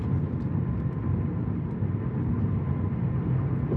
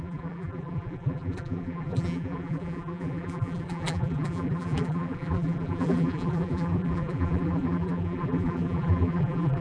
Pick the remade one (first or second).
second